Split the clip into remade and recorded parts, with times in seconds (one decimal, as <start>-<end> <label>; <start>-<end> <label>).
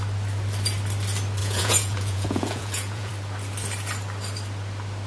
0.0-1.4 recorded; 1.4-3.1 remade; 3.1-5.1 recorded